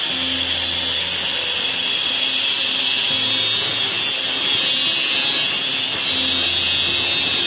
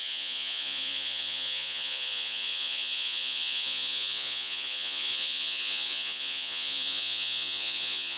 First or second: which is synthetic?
second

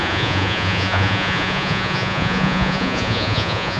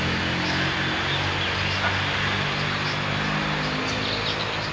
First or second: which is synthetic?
first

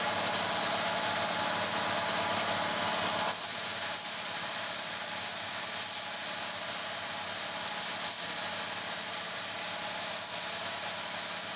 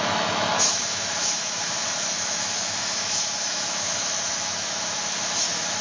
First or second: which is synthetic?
second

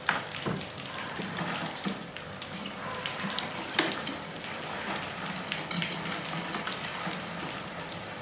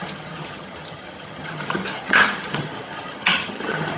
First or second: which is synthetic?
second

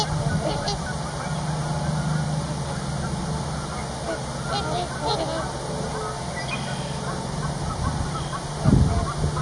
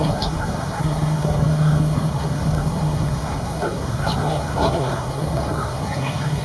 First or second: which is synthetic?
second